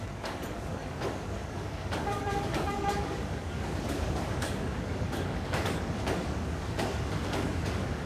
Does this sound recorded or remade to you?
remade